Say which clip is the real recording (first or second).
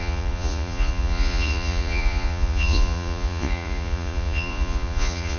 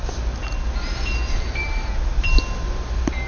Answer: second